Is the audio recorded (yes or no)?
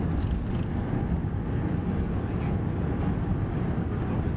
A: yes